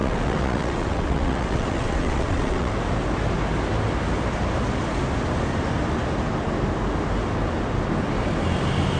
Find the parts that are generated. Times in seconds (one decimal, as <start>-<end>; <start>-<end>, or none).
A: 0.0-2.7